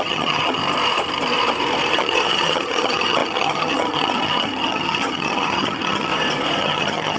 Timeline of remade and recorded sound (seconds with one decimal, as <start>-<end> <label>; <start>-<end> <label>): 0.0-0.6 remade; 0.6-1.9 recorded; 1.9-6.1 remade; 6.1-6.6 recorded; 6.6-7.2 remade